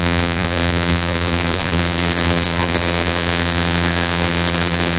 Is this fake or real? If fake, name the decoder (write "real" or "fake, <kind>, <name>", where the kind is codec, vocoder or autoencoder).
fake, vocoder, BigVGAN v2